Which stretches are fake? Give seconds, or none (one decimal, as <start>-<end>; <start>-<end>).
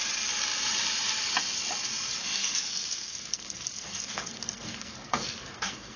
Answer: 2.2-6.0